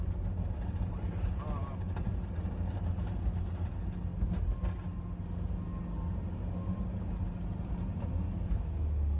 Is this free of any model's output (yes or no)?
yes